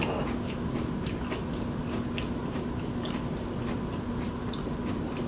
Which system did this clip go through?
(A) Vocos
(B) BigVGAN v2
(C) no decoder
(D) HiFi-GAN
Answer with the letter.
C